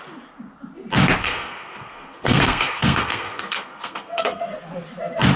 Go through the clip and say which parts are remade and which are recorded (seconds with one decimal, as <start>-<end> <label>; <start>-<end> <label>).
0.0-1.2 recorded; 1.2-4.4 remade; 4.4-5.4 recorded

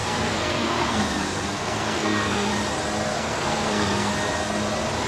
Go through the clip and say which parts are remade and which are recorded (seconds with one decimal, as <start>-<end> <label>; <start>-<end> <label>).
0.0-2.5 remade; 2.5-3.1 recorded; 3.1-4.1 remade; 4.1-5.1 recorded